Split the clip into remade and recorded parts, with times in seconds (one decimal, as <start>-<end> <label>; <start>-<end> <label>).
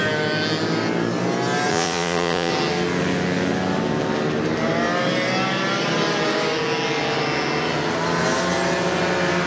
0.0-1.7 recorded; 1.7-2.5 remade; 2.5-9.5 recorded